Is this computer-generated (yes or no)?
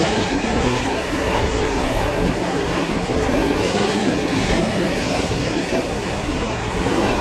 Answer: yes